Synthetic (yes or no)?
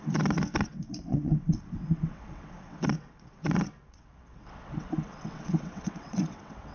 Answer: yes